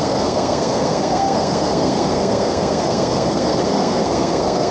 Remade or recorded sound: remade